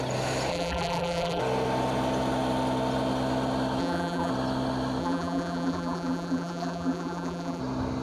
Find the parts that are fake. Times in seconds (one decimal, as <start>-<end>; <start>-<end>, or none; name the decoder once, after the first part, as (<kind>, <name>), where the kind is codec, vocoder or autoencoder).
0.5-1.4 (vocoder, BigVGAN v2); 3.8-4.3; 5.0-7.6